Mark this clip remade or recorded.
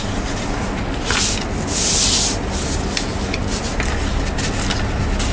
recorded